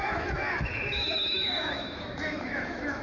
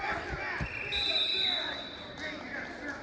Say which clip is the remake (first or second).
first